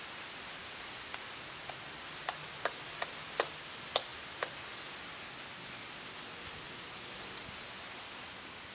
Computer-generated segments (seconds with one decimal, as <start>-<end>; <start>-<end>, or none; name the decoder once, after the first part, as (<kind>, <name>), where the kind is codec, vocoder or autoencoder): none